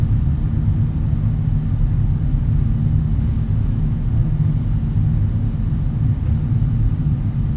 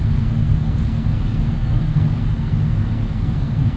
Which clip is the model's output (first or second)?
second